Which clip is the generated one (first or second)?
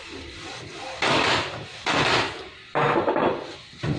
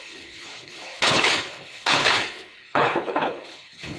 second